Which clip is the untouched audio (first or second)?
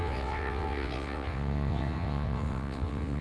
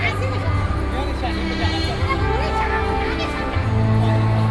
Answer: second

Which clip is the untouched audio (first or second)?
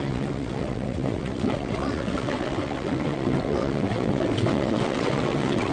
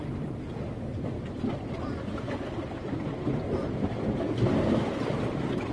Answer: second